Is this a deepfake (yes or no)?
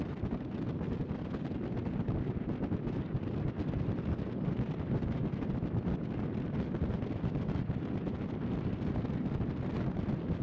no